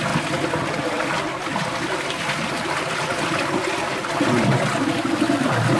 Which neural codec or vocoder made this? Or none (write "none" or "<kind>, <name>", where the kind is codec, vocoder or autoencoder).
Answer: none